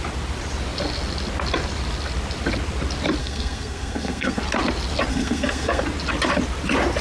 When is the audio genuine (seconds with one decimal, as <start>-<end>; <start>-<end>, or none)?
0.0-3.2; 4.4-5.1; 5.8-7.0

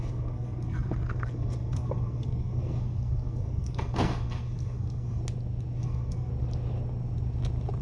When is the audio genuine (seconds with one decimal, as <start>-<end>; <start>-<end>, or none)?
5.2-5.8; 6.3-7.8